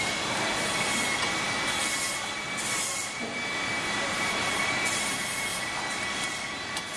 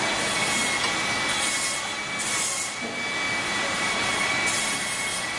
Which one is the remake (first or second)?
first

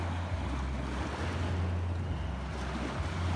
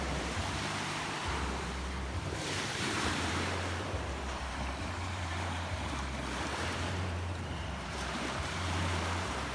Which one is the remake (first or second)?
second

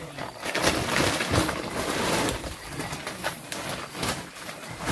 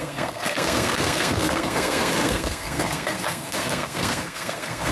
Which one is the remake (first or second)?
second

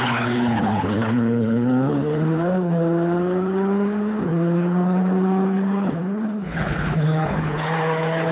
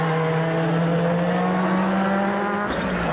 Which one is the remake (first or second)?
first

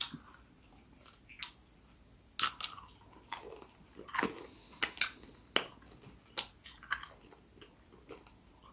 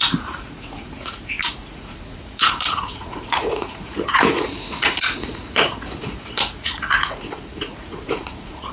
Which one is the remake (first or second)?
second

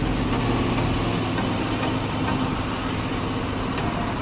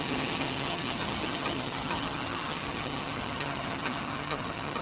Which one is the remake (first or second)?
second